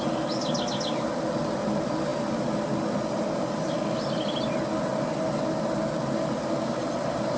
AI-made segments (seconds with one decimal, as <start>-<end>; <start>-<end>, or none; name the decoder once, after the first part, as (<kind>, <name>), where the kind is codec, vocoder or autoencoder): none